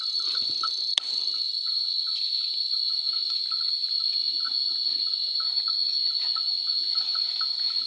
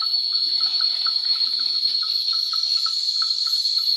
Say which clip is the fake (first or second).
second